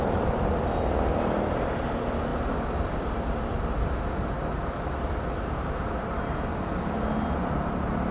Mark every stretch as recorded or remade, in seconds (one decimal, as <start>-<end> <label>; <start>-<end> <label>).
0.0-1.8 remade; 1.8-2.3 recorded; 2.3-3.2 remade; 3.2-8.1 recorded